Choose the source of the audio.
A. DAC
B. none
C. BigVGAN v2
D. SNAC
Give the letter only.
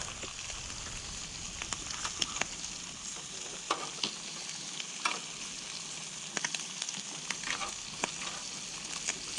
B